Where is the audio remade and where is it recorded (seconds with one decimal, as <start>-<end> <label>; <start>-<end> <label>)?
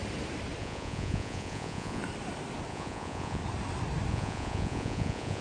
0.0-0.6 recorded; 0.6-2.0 remade; 2.0-2.7 recorded; 2.7-3.4 remade; 3.4-4.1 recorded; 4.1-5.4 remade